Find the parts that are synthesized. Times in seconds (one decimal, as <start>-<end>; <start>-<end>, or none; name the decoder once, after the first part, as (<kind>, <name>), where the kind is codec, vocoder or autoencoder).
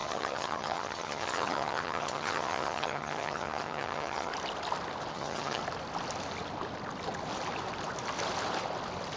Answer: 0.0-4.3 (vocoder, HiFi-GAN); 5.1-5.6